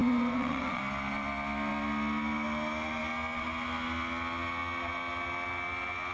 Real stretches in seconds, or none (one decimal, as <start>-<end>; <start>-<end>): 0.8-6.1